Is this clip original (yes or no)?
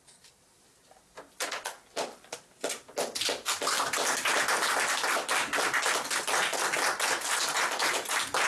yes